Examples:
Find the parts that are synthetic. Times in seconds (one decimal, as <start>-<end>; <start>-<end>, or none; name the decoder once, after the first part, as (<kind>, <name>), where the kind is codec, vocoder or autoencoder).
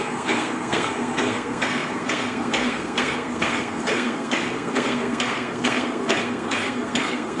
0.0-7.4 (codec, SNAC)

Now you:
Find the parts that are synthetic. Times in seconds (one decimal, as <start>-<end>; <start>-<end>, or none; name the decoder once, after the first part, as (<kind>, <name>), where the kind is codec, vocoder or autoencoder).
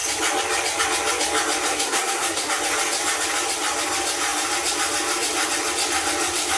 1.7-2.5 (codec, SNAC)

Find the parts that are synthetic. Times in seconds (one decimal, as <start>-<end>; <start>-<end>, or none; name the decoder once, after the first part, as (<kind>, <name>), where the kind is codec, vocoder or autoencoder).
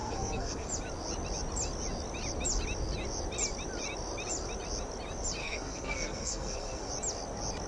0.0-0.7 (codec, SNAC); 5.4-6.9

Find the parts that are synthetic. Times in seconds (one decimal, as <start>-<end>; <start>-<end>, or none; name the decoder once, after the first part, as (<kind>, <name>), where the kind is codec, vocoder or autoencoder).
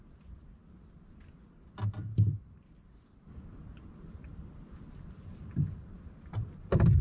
none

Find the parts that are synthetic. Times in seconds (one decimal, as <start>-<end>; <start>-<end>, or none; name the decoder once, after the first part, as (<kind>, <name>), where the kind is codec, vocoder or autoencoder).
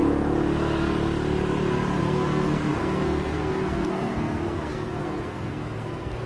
2.0-6.3 (codec, SNAC)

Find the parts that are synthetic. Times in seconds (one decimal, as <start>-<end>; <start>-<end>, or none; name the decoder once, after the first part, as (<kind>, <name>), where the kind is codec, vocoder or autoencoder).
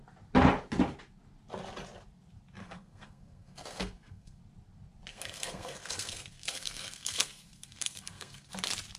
2.6-4.4 (codec, SNAC); 5.1-8.5